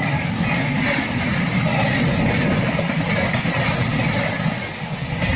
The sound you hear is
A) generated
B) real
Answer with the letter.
B